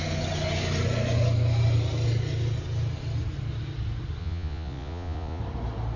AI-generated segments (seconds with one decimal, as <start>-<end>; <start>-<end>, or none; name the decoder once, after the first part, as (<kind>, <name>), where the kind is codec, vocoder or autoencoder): 4.2-5.4 (vocoder, Vocos)